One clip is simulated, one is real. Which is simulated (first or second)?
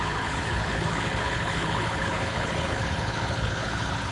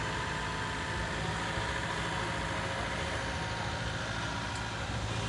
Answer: first